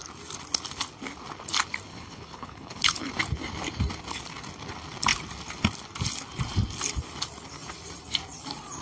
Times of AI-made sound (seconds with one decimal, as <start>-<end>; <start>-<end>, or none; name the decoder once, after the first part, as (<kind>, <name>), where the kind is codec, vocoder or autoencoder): 1.9-3.1 (codec, HILCodec)